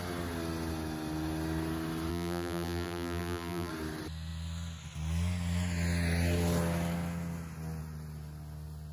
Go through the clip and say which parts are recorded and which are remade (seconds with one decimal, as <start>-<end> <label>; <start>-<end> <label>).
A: 0.0-2.1 recorded; 2.1-3.7 remade; 3.7-8.9 recorded